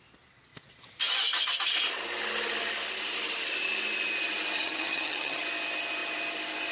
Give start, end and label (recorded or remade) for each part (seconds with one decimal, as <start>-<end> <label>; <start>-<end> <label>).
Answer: 0.0-4.6 recorded; 4.6-5.4 remade; 5.4-6.7 recorded